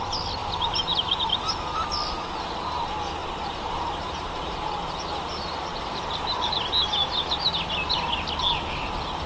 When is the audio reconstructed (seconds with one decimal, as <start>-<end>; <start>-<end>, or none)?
3.2-4.8; 5.7-6.6